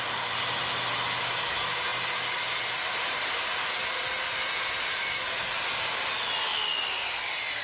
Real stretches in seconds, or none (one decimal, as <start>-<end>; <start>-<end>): 0.0-7.6